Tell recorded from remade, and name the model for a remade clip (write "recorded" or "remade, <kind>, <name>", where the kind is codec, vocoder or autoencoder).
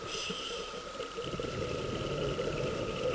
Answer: recorded